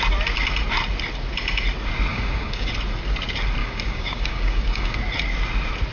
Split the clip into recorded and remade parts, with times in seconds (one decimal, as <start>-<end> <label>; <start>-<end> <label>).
0.0-2.1 recorded; 2.1-2.7 remade; 2.7-3.6 recorded; 3.6-5.0 remade; 5.0-5.9 recorded